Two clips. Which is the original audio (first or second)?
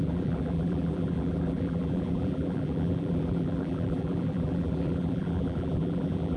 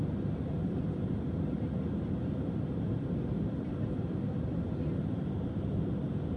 second